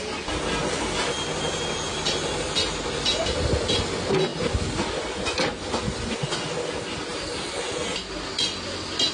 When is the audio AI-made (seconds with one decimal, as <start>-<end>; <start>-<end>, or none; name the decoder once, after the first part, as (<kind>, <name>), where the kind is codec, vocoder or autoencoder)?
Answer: none